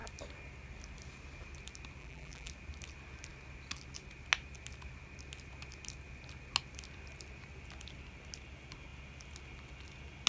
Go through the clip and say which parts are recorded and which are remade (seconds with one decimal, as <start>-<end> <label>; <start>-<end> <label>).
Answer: 0.0-2.0 recorded; 2.0-2.5 remade; 2.5-10.3 recorded